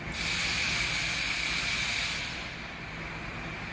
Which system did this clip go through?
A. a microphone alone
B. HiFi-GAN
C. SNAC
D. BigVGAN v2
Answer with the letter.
D